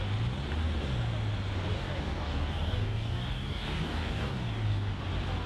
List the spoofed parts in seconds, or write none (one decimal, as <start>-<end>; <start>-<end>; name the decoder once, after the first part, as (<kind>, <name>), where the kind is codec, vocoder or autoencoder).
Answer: 1.7-5.0 (codec, DAC)